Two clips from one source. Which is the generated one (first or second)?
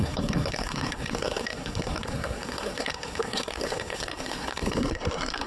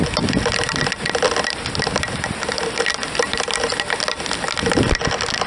first